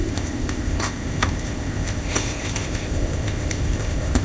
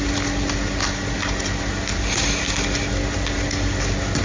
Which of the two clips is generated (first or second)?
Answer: first